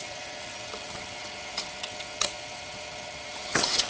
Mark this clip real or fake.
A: fake